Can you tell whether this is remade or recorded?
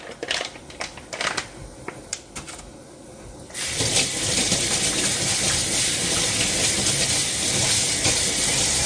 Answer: recorded